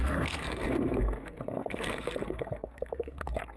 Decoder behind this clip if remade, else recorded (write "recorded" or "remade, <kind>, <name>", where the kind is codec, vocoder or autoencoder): remade, codec, SNAC